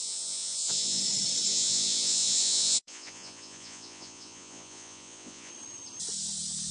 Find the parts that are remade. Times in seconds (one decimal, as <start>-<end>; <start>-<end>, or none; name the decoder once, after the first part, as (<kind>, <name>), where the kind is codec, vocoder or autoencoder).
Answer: 0.0-1.0 (vocoder, Vocos); 1.5-5.5